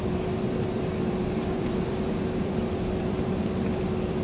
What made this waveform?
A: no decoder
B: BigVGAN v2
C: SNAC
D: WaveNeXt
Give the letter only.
B